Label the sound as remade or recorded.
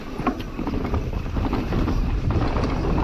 remade